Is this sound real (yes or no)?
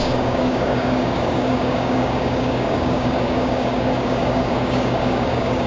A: no